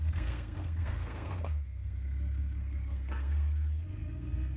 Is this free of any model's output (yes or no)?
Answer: no